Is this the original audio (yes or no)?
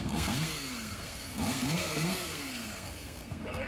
no